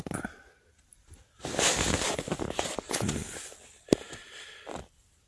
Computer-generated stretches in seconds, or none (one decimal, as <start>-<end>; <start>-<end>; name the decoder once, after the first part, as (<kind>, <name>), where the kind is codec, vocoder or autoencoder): 0.0-0.9 (vocoder, BigVGAN v2); 2.3-5.3